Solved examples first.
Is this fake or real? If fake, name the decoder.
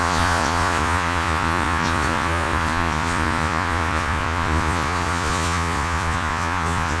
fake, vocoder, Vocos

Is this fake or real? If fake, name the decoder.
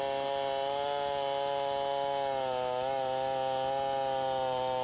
real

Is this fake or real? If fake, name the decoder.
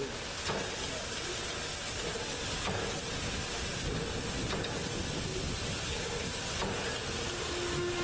real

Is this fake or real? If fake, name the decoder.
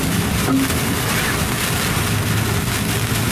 real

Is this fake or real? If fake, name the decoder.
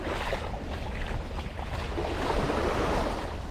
real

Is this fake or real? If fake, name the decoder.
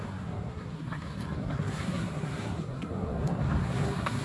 fake, codec, SNAC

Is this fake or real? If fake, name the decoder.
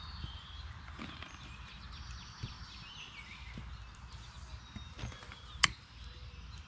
real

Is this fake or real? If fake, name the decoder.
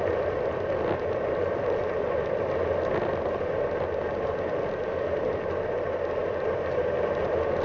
real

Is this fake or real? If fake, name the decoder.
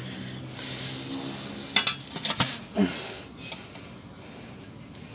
real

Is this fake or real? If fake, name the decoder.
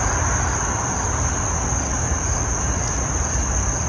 real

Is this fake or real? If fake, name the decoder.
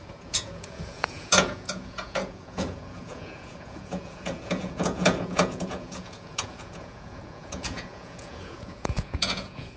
fake, vocoder, Vocos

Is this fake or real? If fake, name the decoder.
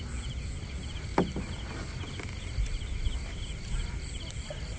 real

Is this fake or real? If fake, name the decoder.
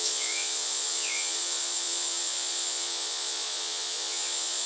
fake, vocoder, Vocos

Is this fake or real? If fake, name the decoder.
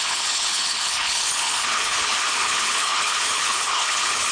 fake, codec, HILCodec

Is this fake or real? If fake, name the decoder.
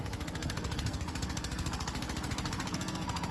fake, codec, SNAC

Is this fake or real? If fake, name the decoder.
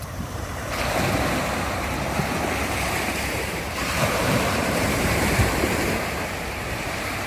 fake, vocoder, BigVGAN v2